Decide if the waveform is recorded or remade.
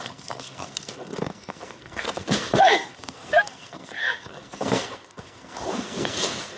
remade